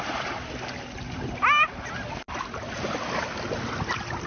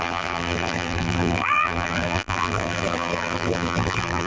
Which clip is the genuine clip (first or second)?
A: first